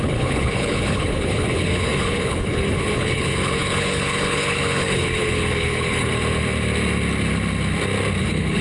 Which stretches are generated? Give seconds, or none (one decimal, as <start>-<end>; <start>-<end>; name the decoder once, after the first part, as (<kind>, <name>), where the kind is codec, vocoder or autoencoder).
0.0-6.1 (codec, HILCodec); 8.2-8.6